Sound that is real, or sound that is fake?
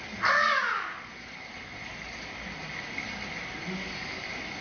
real